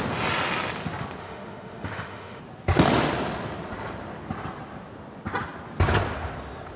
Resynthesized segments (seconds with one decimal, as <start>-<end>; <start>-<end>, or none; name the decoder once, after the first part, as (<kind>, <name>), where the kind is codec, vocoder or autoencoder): 1.2-2.4 (autoencoder, DAC-VAE)